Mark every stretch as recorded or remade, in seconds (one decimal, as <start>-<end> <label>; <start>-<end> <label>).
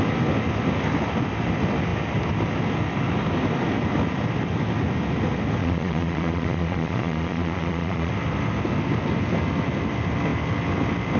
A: 0.0-5.6 recorded; 5.6-8.1 remade; 8.1-11.2 recorded